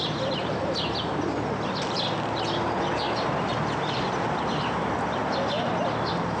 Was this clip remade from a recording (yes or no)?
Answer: no